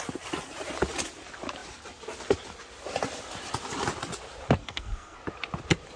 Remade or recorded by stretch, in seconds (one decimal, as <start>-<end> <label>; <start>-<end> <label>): 0.0-4.6 recorded; 4.6-5.2 remade; 5.2-6.0 recorded